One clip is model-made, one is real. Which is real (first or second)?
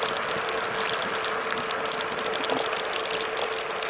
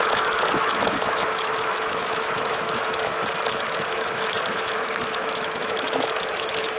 first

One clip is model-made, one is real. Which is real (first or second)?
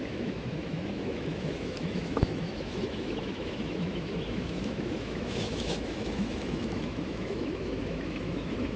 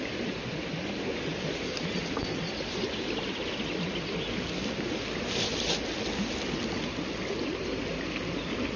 second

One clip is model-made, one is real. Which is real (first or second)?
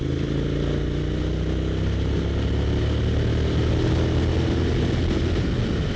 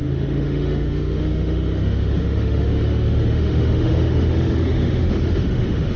first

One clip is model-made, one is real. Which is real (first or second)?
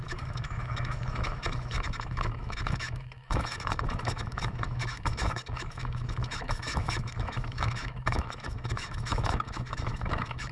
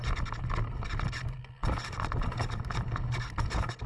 second